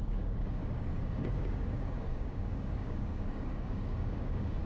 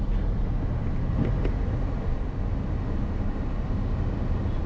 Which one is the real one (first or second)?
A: second